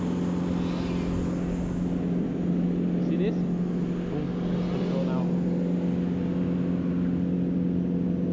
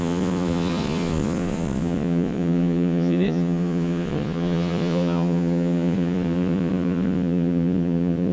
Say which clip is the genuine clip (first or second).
first